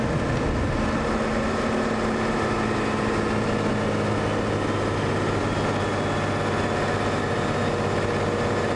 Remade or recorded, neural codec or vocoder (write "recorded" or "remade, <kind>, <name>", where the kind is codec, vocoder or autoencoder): recorded